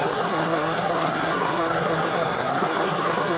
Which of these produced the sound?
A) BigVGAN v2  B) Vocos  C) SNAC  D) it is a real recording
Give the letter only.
C